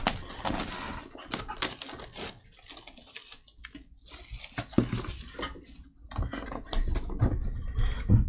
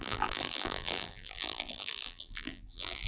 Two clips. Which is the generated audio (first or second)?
second